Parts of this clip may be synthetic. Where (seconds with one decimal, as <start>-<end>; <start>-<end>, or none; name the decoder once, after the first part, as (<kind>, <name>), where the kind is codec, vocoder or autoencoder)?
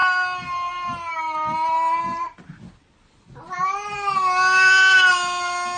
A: 1.1-1.7 (autoencoder, DAC-VAE)